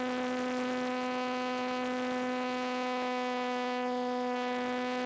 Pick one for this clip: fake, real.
real